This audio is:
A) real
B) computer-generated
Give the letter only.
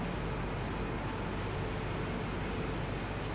A